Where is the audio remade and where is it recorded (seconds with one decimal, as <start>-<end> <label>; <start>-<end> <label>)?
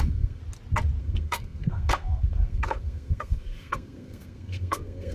0.0-0.4 remade; 0.4-1.0 recorded; 1.0-5.1 remade